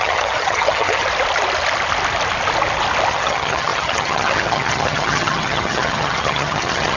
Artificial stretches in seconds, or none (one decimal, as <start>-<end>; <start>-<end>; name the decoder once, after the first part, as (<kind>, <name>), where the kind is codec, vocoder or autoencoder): 0.0-1.0 (vocoder, HiFi-GAN); 3.1-7.0